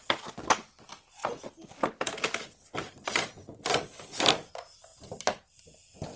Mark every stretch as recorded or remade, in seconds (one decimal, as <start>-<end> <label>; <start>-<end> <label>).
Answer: 0.0-1.2 recorded; 1.2-2.7 remade; 2.7-6.2 recorded